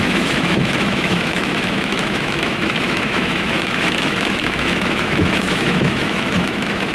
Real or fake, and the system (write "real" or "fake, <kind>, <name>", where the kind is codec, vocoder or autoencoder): fake, autoencoder, DAC-VAE